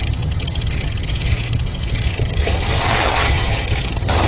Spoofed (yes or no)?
yes